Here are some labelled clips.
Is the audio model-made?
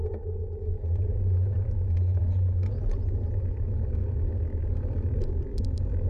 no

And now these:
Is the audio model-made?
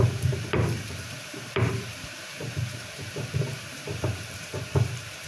yes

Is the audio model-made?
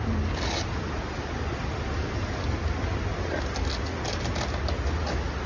no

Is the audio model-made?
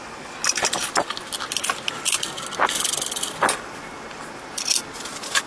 no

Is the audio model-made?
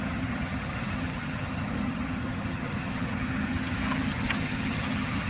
yes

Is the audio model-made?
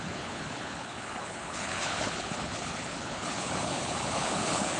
yes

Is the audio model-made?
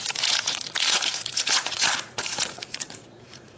yes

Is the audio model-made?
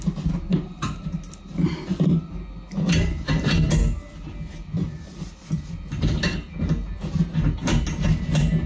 no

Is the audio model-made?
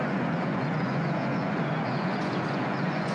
yes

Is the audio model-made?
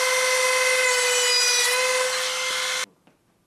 no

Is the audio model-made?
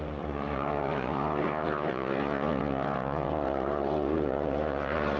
yes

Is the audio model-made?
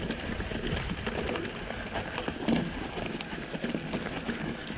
no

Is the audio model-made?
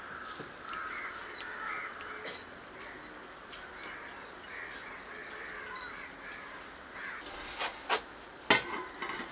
no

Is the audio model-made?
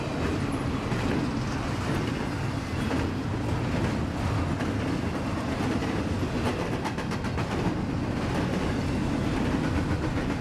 no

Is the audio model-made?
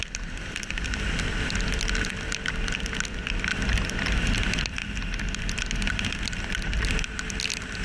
no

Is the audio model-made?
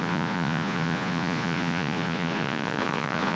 yes